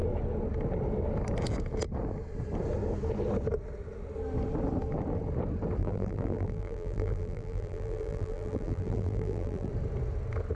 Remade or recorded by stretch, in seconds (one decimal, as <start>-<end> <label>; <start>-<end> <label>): 0.0-5.8 recorded; 5.8-9.7 remade; 9.7-10.5 recorded